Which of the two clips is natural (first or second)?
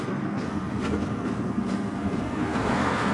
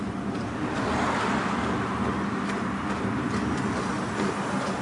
second